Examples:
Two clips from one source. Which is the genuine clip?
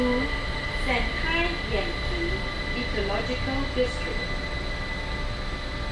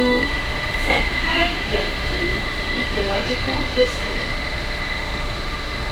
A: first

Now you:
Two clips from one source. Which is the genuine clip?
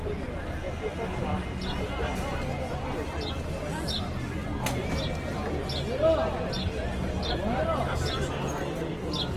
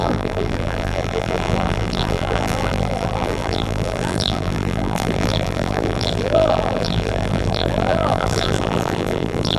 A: first